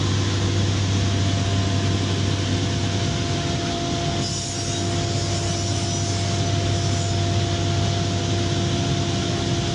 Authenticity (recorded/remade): recorded